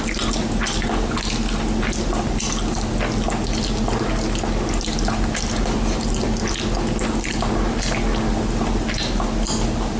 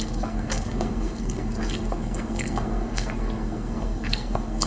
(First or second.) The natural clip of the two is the first